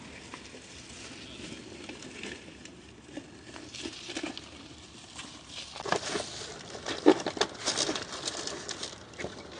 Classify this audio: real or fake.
real